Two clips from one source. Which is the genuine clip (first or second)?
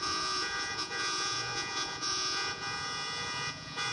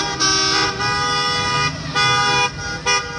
second